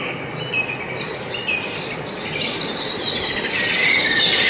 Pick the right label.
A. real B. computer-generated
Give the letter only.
A